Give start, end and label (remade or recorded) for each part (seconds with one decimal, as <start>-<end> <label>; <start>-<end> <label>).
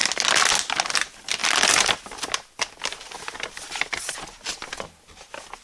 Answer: 0.0-5.6 recorded